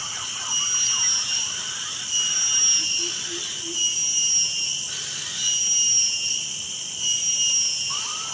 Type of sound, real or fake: real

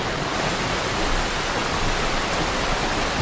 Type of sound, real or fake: real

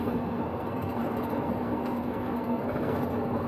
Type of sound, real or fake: fake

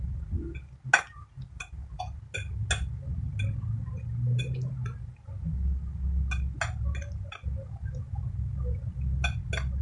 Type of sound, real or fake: real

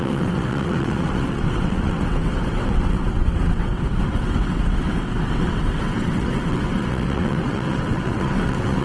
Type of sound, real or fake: fake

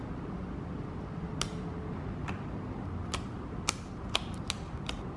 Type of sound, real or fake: real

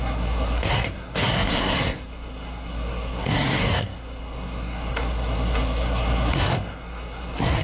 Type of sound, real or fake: fake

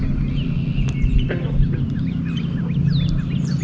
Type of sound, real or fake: real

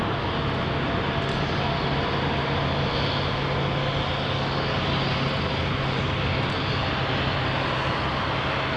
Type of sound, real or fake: real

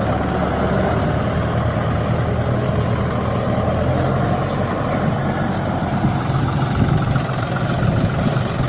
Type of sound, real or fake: real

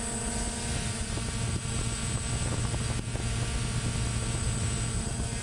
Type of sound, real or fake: real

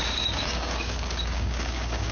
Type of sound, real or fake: fake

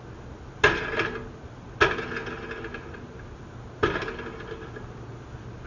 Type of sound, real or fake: real